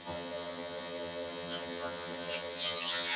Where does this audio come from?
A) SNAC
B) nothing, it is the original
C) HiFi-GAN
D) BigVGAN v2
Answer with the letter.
C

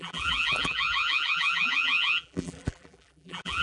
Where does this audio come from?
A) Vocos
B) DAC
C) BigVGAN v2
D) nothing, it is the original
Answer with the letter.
C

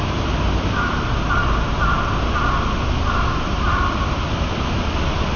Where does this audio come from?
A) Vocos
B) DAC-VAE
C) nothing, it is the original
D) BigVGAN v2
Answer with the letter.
C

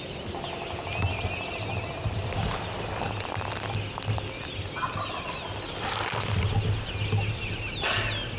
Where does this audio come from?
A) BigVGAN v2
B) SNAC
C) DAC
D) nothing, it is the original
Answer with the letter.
D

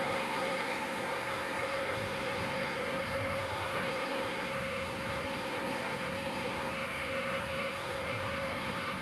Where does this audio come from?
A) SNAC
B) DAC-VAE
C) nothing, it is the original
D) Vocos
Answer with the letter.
A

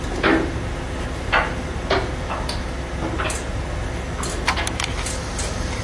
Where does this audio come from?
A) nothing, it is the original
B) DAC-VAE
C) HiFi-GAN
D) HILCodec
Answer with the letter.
A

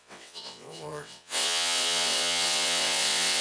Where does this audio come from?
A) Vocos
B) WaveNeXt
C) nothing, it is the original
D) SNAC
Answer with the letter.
B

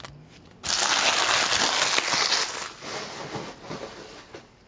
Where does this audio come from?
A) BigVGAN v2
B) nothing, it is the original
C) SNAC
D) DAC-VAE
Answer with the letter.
B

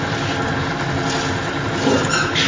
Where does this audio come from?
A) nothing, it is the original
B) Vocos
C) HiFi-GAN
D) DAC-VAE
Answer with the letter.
A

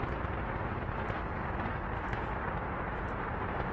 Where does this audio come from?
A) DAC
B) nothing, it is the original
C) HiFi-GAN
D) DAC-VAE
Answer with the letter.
B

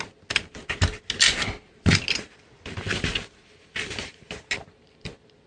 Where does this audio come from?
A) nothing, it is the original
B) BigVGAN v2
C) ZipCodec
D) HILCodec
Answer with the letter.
A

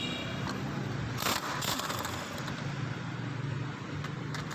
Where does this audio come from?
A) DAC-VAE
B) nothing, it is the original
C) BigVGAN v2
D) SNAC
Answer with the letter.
B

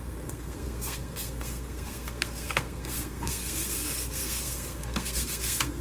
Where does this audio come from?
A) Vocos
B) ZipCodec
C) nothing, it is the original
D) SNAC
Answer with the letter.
D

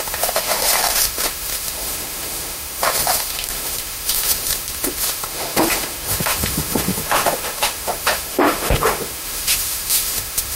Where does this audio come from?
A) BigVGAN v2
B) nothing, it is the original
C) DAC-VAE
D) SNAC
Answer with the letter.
C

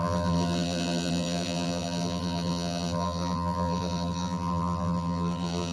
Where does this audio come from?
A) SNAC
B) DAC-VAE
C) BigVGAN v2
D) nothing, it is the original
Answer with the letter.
C